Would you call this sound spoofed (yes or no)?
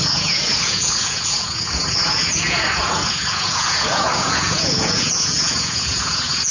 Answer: yes